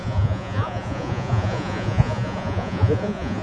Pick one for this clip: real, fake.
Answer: fake